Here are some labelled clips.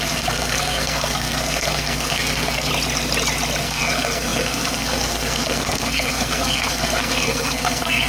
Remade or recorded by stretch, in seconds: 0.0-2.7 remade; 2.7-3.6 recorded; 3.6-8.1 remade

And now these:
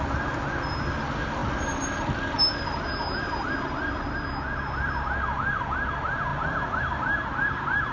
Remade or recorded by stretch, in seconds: 0.0-7.9 recorded

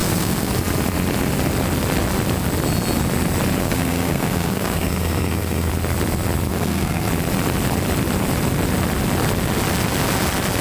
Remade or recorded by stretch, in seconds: 0.0-0.5 remade; 0.5-3.6 recorded; 3.6-5.7 remade; 5.7-6.5 recorded; 6.5-7.1 remade; 7.1-10.6 recorded

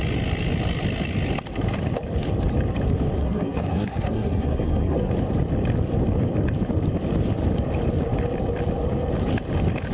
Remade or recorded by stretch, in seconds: 0.0-3.2 recorded; 3.2-5.1 remade; 5.1-9.9 recorded

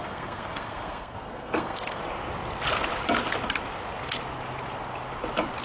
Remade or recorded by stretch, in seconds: 0.0-2.0 remade; 2.0-5.6 recorded

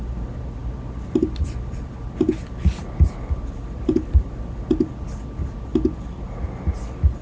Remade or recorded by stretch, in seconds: 0.0-7.2 recorded